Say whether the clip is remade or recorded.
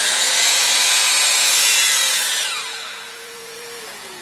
remade